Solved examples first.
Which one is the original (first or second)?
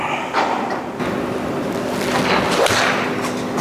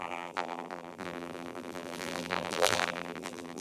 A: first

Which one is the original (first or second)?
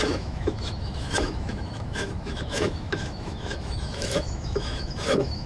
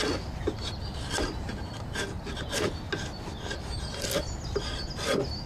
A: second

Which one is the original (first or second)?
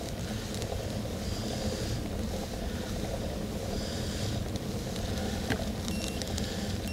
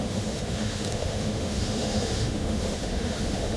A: first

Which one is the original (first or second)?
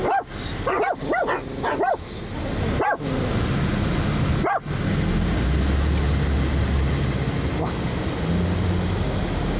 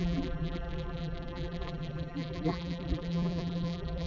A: first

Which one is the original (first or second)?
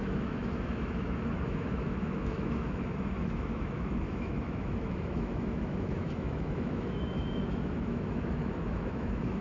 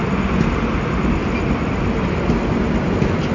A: second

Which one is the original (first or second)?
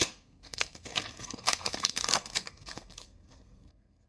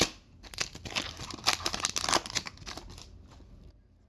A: second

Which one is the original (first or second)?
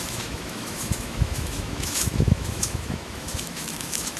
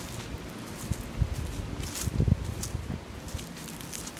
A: second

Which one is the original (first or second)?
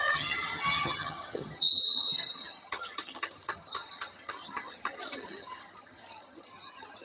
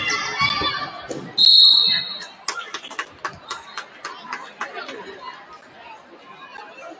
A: second